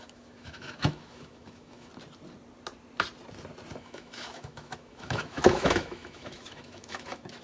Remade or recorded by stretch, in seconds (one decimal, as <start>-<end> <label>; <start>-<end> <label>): 0.0-1.9 remade; 1.9-3.8 recorded; 3.8-7.4 remade